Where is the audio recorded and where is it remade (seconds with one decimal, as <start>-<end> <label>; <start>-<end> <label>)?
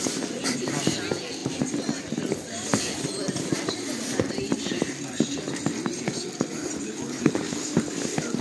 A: 0.0-8.4 recorded